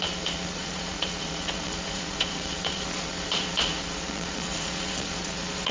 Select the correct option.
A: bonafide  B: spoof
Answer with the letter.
B